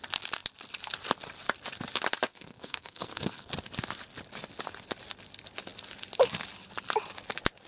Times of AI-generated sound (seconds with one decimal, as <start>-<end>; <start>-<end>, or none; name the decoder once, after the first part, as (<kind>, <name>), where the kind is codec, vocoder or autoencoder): 2.3-3.5 (codec, SNAC)